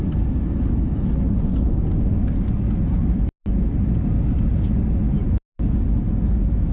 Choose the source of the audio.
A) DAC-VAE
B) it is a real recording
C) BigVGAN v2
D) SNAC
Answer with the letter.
B